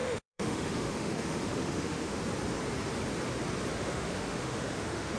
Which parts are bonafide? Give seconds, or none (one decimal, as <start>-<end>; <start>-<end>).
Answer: 2.2-3.7